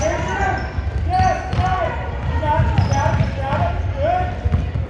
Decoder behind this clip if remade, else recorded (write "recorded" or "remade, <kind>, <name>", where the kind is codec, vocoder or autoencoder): recorded